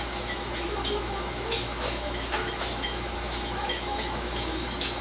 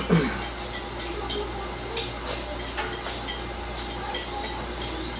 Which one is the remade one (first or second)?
first